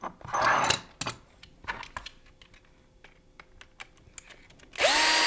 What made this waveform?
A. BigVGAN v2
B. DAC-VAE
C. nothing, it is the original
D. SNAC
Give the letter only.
C